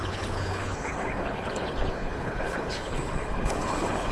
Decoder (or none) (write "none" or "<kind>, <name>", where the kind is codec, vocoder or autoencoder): codec, HILCodec